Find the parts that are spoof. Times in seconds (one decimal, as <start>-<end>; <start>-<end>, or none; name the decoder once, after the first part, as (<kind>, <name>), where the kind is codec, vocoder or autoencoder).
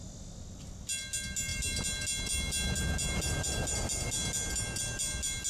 none